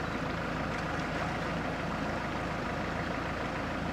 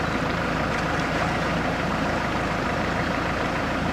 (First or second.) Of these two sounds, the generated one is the second